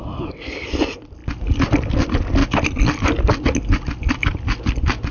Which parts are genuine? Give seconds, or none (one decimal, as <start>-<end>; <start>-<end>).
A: 1.2-1.7; 2.4-4.1